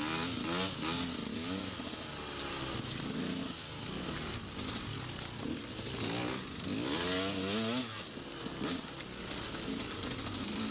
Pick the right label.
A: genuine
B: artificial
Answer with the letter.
A